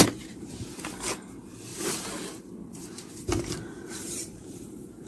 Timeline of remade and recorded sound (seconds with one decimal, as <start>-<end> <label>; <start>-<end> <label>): 0.0-1.7 recorded; 1.7-5.1 remade